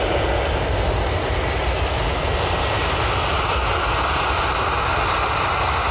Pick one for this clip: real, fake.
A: real